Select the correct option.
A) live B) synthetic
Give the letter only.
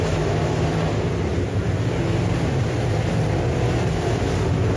A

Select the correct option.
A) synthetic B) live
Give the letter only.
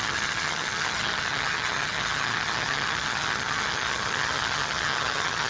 A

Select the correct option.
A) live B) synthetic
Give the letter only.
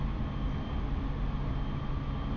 A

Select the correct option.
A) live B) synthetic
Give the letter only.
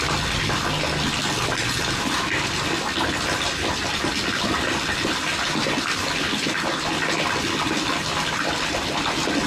A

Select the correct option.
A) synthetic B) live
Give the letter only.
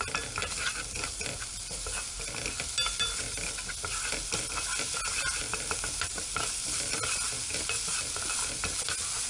B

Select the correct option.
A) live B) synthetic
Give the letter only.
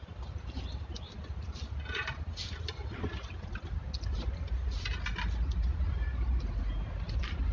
A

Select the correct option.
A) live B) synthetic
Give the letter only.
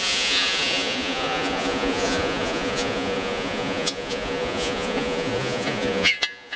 B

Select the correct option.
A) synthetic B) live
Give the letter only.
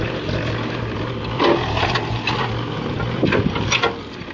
B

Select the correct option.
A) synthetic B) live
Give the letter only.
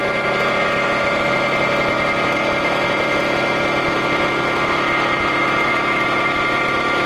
B